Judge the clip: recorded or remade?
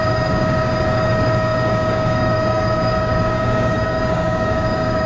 remade